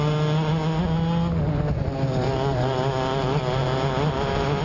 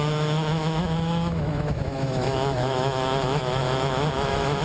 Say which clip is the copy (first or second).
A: second